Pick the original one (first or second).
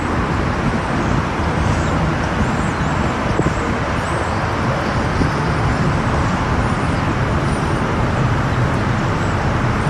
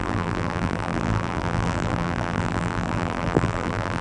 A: first